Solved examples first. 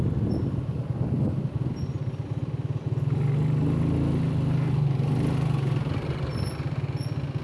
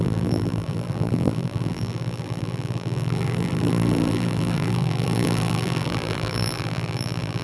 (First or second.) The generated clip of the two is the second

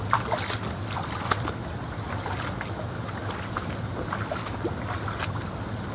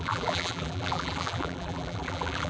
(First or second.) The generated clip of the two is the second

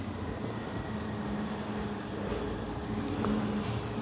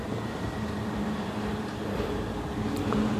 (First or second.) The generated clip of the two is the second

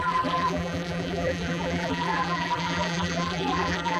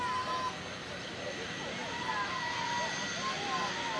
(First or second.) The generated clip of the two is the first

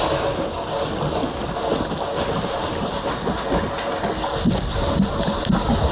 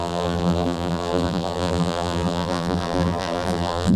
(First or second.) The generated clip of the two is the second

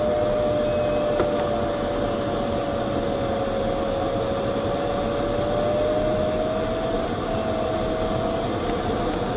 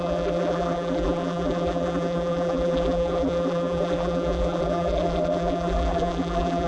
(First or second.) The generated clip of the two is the second